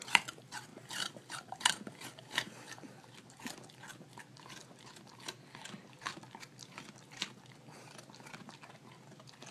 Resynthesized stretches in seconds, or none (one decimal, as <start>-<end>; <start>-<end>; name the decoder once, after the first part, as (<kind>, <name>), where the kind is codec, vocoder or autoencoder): 0.7-3.4 (vocoder, BigVGAN v2)